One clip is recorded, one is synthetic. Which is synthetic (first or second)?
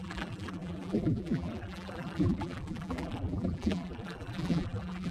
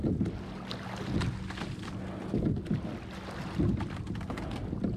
first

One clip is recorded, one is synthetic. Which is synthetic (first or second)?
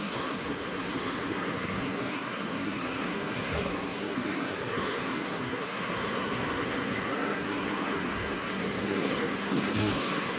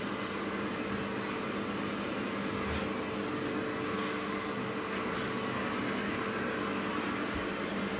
first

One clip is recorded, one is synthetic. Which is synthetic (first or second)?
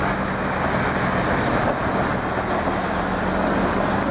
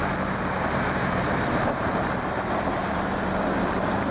second